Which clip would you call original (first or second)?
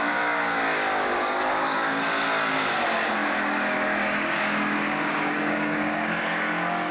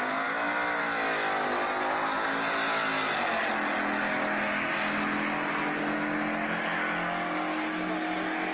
second